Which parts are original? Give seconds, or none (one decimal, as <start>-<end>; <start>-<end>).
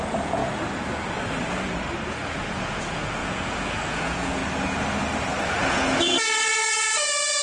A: 0.4-2.1; 4.4-5.7